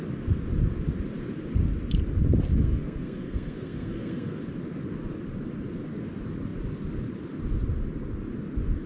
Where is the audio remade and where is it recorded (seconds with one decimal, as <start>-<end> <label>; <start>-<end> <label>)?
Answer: 0.0-2.5 recorded; 2.5-4.4 remade; 4.4-8.9 recorded